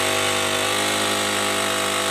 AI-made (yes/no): no